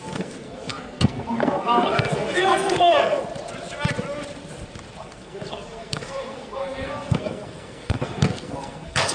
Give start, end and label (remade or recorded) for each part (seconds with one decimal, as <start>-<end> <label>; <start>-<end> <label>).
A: 0.0-3.2 remade; 3.2-5.0 recorded; 5.0-9.1 remade